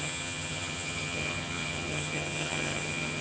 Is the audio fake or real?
fake